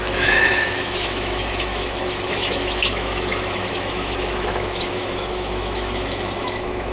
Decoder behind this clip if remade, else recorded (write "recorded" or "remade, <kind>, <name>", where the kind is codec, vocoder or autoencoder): remade, autoencoder, DAC-VAE